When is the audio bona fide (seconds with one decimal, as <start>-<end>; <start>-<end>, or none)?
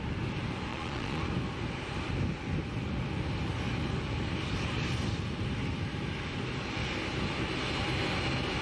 0.0-0.7; 1.2-8.6